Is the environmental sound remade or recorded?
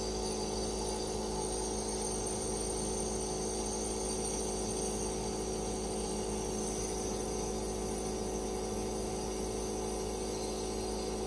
recorded